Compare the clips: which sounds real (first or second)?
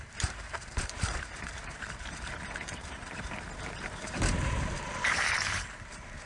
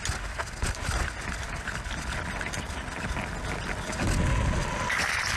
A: second